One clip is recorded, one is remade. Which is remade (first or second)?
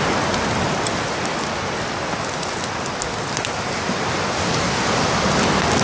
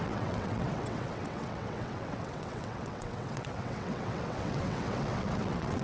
second